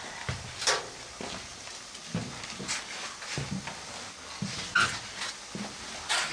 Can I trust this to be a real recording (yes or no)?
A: yes